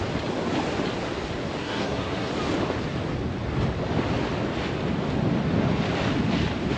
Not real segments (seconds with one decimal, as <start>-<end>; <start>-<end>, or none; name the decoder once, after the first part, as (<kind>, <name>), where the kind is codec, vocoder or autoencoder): 1.6-2.3 (codec, SNAC)